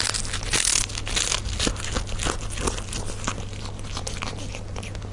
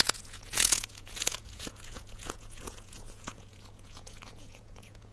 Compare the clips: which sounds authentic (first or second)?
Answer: first